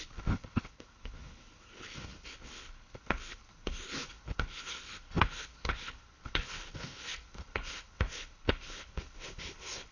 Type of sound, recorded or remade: remade